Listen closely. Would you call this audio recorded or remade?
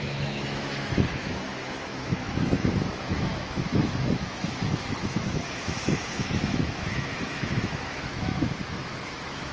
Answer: remade